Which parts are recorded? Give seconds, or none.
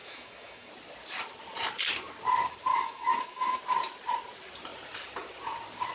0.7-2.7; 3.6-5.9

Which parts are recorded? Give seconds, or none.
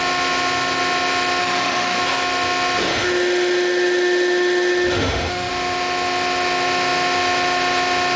0.0-1.4; 2.0-2.9; 5.5-8.2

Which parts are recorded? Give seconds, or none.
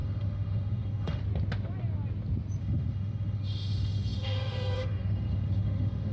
1.2-2.6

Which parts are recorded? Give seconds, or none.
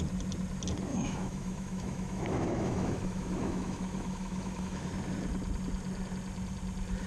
0.0-0.9; 4.9-7.1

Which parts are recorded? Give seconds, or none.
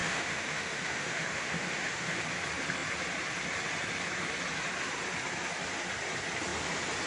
2.2-7.1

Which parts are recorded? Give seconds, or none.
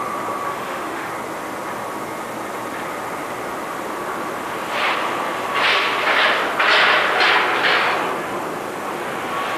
0.0-0.5; 1.1-9.6